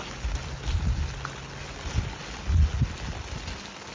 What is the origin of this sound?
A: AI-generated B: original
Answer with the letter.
B